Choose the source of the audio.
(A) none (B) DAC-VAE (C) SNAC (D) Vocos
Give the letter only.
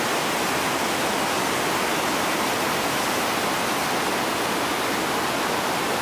A